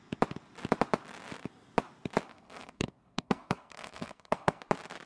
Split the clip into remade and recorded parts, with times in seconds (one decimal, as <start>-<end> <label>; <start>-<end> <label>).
0.0-2.3 recorded; 2.3-4.6 remade; 4.6-5.1 recorded